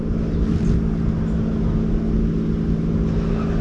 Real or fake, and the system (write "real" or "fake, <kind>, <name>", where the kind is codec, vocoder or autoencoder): real